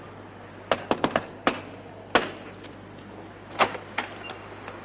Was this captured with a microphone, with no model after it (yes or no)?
yes